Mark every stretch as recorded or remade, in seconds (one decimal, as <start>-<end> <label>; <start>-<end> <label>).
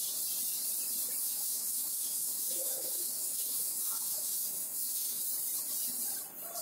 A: 0.0-1.2 recorded; 1.2-5.2 remade; 5.2-6.6 recorded